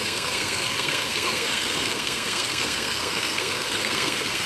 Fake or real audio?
fake